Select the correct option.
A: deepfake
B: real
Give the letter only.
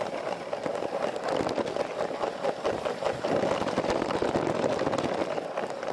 B